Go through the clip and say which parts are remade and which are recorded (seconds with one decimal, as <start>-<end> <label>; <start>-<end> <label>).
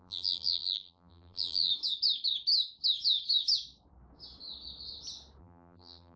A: 0.0-1.7 remade; 1.7-5.4 recorded; 5.4-6.2 remade